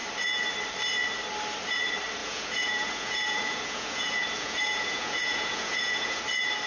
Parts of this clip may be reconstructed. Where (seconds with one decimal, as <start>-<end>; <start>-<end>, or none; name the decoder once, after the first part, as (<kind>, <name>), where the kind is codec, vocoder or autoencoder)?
2.2-6.2 (vocoder, Vocos)